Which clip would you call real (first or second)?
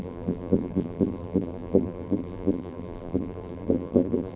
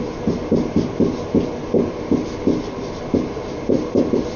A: second